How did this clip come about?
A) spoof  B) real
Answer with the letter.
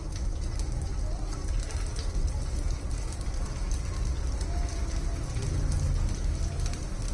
B